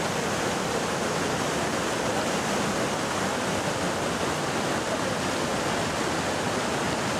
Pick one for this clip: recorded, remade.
recorded